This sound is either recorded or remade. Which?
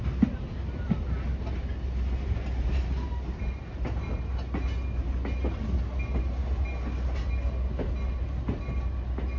recorded